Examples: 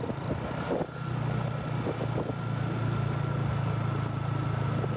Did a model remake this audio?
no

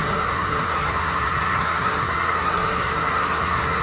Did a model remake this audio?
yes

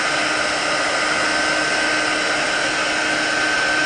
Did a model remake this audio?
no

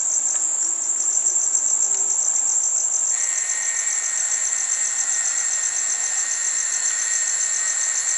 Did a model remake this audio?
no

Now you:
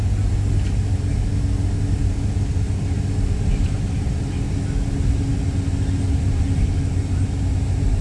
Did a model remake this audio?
no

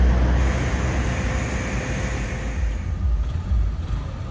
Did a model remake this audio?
no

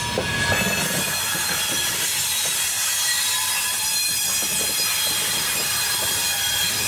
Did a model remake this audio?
no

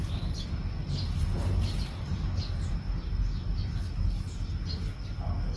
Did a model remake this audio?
no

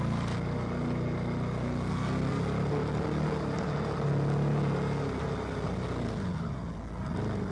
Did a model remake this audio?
no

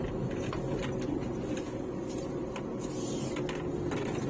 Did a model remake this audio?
no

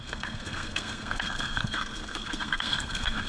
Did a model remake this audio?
yes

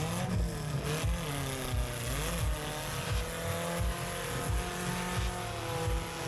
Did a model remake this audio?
no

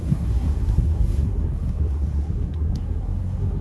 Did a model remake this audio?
yes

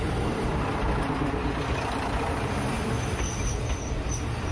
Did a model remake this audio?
no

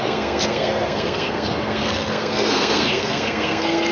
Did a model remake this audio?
yes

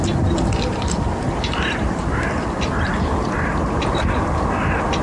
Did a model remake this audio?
no